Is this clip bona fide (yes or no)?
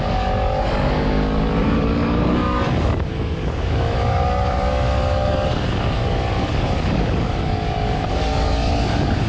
no